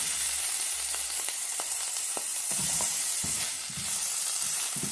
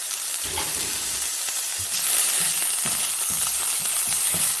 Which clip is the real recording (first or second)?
second